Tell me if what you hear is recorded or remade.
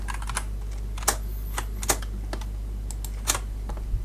recorded